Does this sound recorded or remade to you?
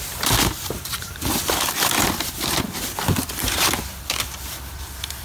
remade